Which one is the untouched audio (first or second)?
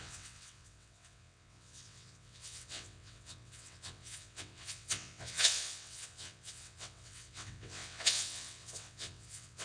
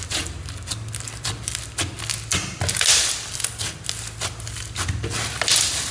second